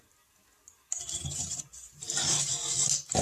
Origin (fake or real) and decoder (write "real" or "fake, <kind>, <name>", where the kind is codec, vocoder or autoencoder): real